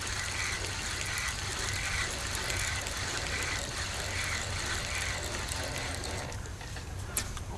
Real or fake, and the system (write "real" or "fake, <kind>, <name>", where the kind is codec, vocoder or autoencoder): real